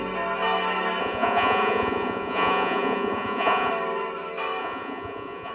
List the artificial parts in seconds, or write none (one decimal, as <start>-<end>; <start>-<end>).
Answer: 1.0-3.7; 4.6-5.5